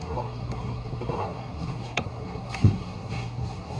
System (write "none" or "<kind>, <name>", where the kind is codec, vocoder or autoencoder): codec, SNAC